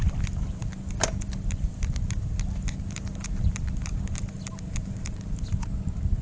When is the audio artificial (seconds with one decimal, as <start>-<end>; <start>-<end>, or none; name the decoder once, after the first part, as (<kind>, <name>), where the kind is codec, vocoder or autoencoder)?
none